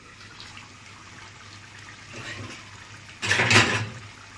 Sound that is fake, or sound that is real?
real